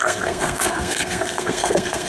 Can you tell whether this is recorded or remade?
remade